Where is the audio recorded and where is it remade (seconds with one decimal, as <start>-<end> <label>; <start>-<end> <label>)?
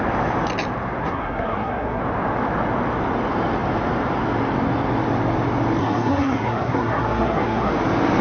0.0-1.0 recorded; 1.0-2.0 remade; 2.0-5.8 recorded; 5.8-7.7 remade; 7.7-8.2 recorded